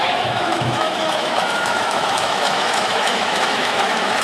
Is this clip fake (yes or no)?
yes